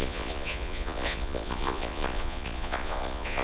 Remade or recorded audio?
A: remade